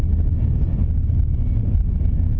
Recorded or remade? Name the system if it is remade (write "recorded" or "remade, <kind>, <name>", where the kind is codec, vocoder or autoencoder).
recorded